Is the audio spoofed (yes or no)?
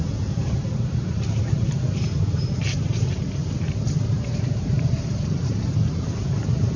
yes